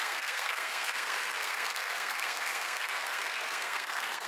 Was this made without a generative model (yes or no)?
no